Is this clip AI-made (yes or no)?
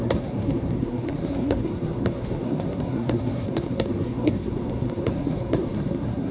yes